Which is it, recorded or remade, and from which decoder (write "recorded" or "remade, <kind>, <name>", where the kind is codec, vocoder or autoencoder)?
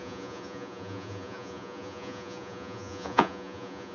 remade, vocoder, Vocos